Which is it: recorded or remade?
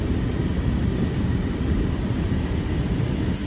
recorded